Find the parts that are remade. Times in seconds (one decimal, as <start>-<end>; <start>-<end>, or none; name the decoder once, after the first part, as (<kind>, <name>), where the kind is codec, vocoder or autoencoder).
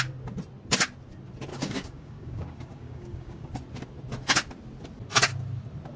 1.5-3.5 (codec, DAC)